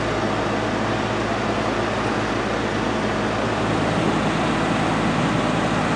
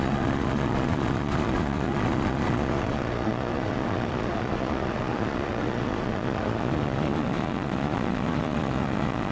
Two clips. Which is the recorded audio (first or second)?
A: first